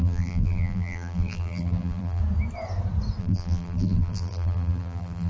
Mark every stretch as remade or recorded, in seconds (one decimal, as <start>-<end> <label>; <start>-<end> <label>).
0.0-2.2 remade; 2.2-3.2 recorded; 3.2-5.3 remade